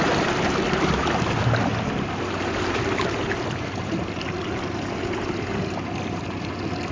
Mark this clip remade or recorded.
recorded